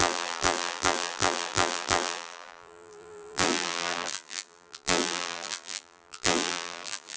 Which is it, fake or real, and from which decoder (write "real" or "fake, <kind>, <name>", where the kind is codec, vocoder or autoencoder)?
fake, vocoder, BigVGAN v2